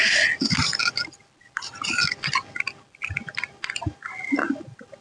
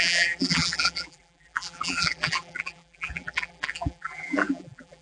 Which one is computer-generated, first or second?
second